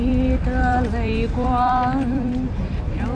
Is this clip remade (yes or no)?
yes